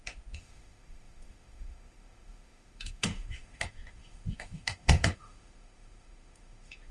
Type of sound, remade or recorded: remade